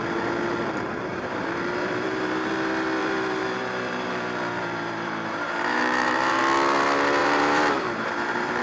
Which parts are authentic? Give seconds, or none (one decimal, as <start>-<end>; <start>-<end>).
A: 0.0-1.1; 2.5-3.0; 6.4-7.2